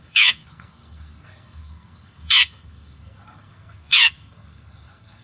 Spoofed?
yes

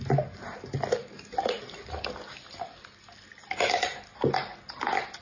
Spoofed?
no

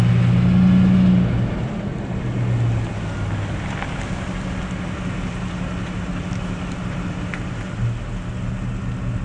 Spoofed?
no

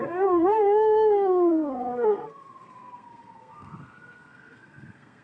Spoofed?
yes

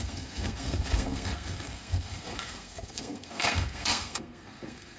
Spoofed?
yes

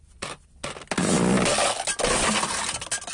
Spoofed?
no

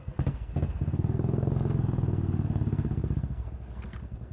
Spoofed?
yes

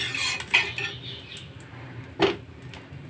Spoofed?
no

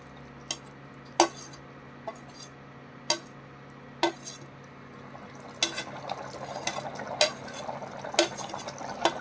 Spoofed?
no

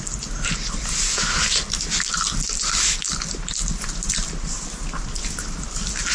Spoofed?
no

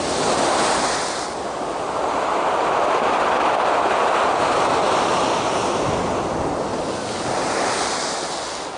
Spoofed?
no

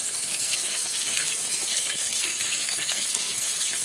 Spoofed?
yes